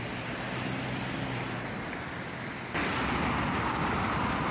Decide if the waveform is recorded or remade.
recorded